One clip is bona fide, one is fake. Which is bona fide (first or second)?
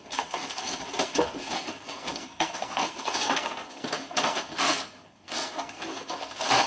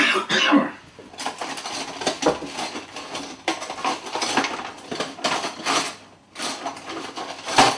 second